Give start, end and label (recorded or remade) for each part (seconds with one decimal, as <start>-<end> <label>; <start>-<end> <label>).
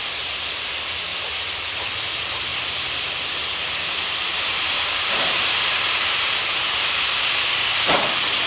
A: 0.0-1.1 recorded; 1.1-1.7 remade; 1.7-2.5 recorded; 2.5-6.9 remade; 6.9-8.5 recorded